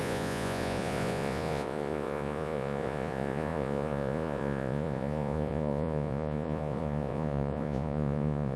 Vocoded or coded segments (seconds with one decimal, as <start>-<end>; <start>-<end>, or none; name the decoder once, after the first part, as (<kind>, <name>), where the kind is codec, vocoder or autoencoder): 0.0-8.6 (vocoder, Vocos)